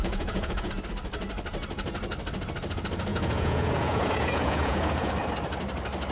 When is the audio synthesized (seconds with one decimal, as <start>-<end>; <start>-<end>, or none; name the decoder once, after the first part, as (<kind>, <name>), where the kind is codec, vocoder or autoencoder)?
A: 0.0-0.7 (vocoder, Vocos); 3.1-5.1